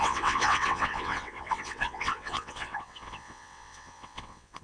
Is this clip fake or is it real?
fake